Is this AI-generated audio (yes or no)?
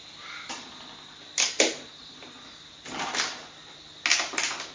no